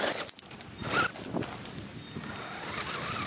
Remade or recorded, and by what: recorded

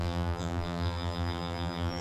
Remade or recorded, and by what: remade, vocoder, BigVGAN v2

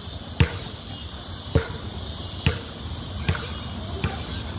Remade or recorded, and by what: recorded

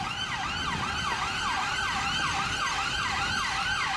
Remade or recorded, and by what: recorded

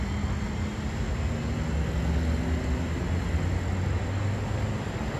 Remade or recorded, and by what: recorded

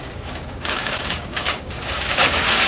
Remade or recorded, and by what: remade, codec, DAC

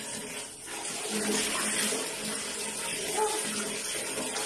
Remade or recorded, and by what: recorded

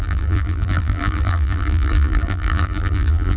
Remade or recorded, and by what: remade, vocoder, BigVGAN v2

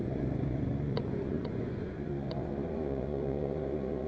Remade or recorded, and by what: remade, vocoder, Vocos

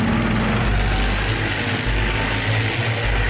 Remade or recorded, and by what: recorded